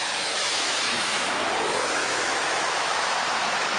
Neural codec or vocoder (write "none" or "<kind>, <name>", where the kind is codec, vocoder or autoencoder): autoencoder, DAC-VAE